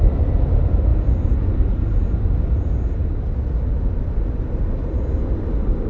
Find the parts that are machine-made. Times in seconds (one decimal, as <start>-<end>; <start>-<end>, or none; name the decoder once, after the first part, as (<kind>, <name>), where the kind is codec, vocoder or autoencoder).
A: none